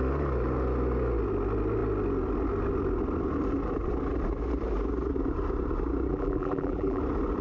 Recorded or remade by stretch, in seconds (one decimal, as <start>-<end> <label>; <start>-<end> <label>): 0.0-6.1 recorded; 6.1-7.0 remade; 7.0-7.4 recorded